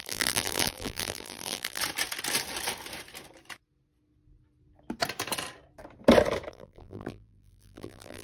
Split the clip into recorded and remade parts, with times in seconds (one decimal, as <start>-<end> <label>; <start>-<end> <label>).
0.0-1.8 remade; 1.8-6.5 recorded; 6.5-8.2 remade